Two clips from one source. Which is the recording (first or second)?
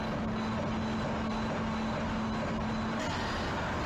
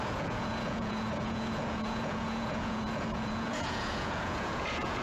first